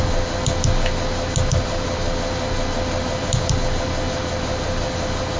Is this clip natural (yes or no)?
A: yes